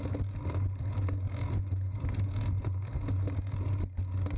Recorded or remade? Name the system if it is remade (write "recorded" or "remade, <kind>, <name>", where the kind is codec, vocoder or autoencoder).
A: recorded